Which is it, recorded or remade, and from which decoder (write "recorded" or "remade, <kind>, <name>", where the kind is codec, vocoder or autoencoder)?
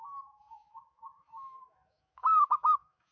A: remade, autoencoder, DAC-VAE